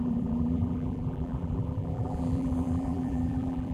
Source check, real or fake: fake